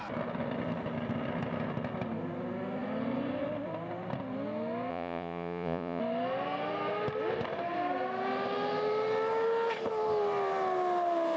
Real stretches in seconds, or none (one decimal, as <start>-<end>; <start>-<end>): 0.0-4.9; 6.0-11.4